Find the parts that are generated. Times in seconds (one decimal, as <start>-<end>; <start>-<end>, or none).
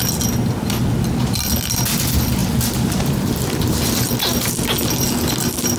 2.4-4.5